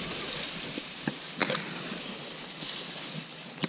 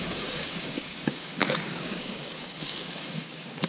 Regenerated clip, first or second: second